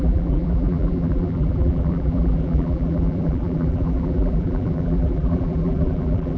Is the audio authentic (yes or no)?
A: no